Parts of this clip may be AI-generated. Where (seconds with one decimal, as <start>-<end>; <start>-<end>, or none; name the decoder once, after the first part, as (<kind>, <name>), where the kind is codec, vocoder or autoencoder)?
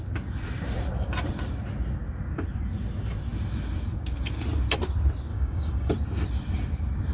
5.3-5.9 (codec, DAC)